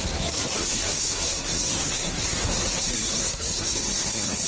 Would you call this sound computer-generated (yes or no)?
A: yes